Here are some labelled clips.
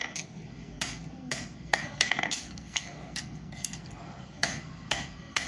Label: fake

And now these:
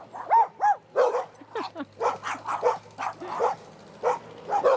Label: real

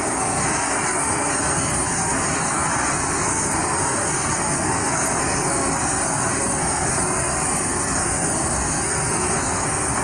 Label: fake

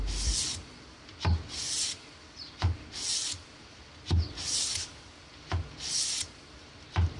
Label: real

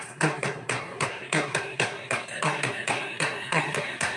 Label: fake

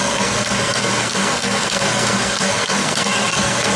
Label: fake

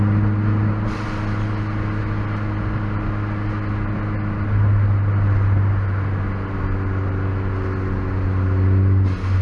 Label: real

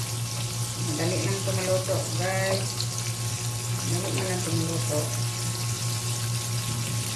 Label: real